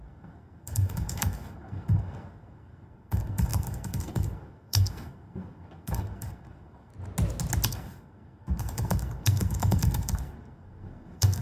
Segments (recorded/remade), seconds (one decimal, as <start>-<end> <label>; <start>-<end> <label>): 0.0-6.9 remade; 6.9-7.7 recorded; 7.7-11.4 remade